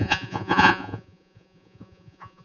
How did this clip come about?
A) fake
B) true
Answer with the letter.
A